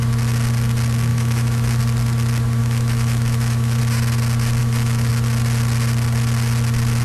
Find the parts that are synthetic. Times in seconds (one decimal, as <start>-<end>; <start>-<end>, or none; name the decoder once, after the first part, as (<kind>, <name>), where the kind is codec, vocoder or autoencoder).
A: 1.1-1.8 (autoencoder, DAC-VAE); 2.6-3.8; 4.6-5.1